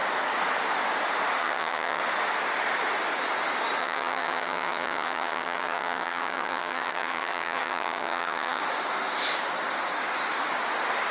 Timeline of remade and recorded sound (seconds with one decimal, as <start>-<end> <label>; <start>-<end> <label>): 0.0-1.4 recorded; 1.4-2.0 remade; 2.0-3.8 recorded; 3.8-8.6 remade; 8.6-11.1 recorded